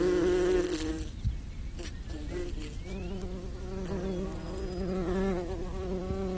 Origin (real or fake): real